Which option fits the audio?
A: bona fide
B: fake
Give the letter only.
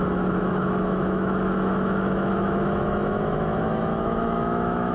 B